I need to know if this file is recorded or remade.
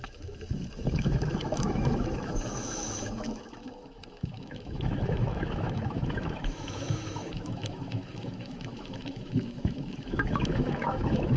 remade